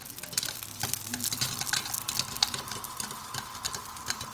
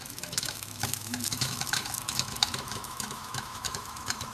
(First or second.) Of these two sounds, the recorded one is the first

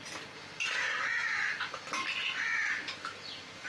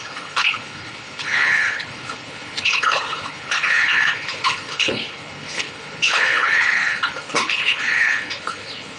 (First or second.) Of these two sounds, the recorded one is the first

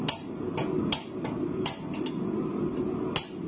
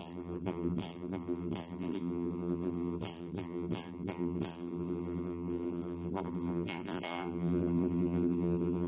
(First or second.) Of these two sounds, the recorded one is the first